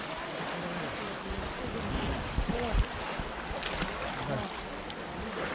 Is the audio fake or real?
real